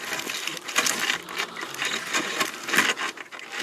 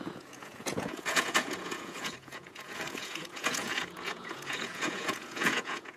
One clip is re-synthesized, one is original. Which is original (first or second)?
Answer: first